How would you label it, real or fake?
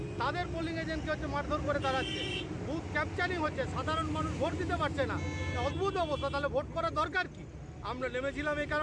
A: real